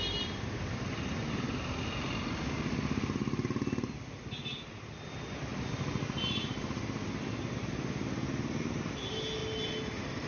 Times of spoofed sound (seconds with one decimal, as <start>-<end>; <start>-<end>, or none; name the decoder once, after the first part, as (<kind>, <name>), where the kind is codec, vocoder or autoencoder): none

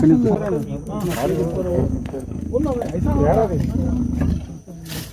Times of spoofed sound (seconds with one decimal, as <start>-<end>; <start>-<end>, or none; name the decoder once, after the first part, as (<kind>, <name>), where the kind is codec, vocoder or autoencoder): 1.7-2.5 (codec, SNAC)

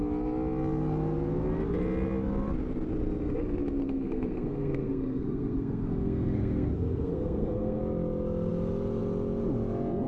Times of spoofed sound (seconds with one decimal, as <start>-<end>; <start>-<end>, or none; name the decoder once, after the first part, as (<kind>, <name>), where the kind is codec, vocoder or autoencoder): 3.8-7.8 (codec, SNAC)

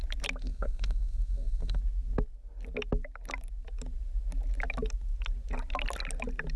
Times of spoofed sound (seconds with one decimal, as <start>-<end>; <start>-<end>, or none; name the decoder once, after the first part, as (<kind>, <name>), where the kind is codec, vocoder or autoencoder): 0.4-1.8 (codec, SNAC)

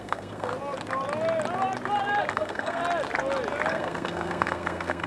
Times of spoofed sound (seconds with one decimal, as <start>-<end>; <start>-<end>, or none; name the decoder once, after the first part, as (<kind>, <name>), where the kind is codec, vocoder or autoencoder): 0.0-0.5 (codec, SNAC); 2.3-2.8; 3.7-5.1

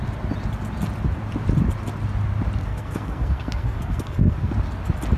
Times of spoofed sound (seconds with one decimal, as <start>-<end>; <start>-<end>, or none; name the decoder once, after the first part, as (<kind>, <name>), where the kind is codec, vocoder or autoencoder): 2.6-4.5 (codec, SNAC)

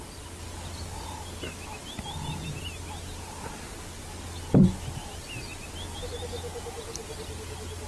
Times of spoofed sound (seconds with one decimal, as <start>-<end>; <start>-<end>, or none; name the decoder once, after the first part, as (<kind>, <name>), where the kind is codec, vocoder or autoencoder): none

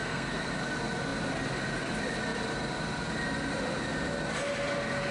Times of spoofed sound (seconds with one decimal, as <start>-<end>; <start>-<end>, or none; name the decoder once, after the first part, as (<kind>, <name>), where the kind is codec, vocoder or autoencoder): 0.0-0.5 (codec, SNAC)